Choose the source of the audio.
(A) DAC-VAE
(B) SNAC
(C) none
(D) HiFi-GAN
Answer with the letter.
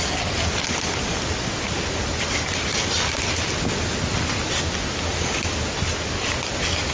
C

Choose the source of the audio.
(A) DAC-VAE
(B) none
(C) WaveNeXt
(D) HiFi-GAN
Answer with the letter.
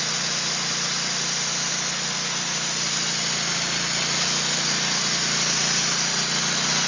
B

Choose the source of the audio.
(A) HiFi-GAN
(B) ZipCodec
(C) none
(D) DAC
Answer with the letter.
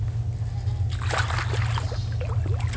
C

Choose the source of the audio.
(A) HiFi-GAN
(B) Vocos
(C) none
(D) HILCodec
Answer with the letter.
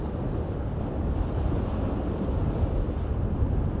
C